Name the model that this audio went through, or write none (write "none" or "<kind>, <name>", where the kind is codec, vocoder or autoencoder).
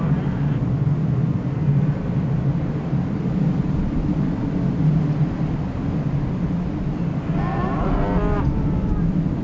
none